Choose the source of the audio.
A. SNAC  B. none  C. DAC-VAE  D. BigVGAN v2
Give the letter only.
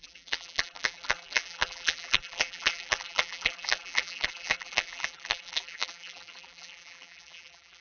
D